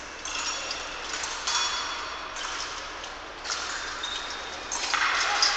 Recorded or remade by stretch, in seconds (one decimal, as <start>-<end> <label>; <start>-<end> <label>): 0.0-5.6 recorded